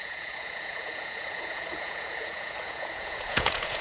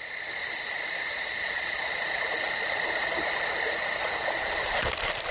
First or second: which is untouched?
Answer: second